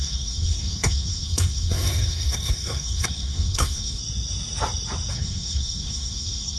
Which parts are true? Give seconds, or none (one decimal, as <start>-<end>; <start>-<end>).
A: 4.0-5.1